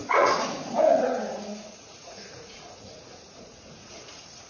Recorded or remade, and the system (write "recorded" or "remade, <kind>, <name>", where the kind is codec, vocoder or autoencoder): remade, vocoder, Vocos